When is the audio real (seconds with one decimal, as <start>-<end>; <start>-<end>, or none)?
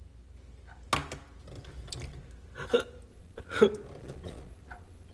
0.0-3.1; 3.6-4.0